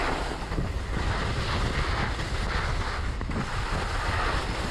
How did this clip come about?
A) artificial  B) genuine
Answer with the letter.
B